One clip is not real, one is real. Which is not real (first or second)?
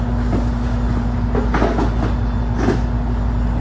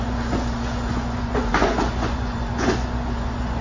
second